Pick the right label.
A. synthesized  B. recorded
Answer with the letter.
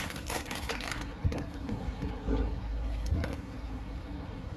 A